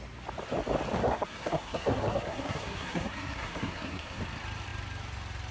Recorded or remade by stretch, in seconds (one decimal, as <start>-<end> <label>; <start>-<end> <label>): 0.0-1.0 recorded; 1.0-4.2 remade; 4.2-5.5 recorded